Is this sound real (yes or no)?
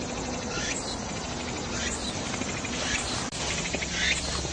yes